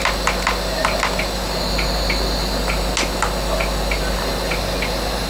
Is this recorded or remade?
recorded